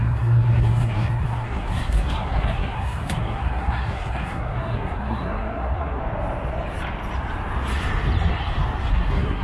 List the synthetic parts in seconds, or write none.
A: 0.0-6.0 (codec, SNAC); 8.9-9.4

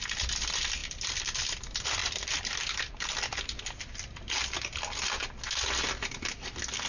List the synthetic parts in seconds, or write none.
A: 0.8-1.4 (vocoder, BigVGAN v2); 2.0-5.4

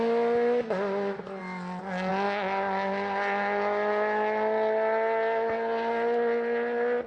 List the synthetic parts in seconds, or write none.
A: none

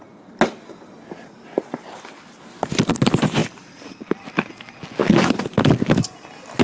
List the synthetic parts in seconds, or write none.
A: 1.6-2.4 (vocoder, BigVGAN v2); 3.4-4.1; 5.0-5.6

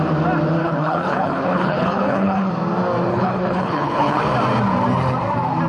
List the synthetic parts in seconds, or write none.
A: 0.6-2.5 (codec, HILCodec); 3.1-4.2

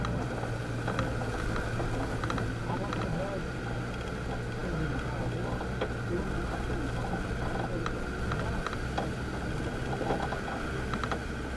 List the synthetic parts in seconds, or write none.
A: none

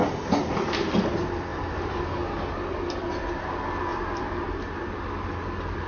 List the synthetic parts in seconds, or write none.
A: 1.5-2.0 (vocoder, BigVGAN v2); 3.9-5.0